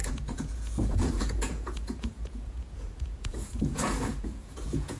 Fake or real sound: fake